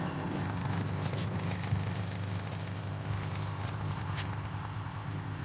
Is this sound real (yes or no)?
no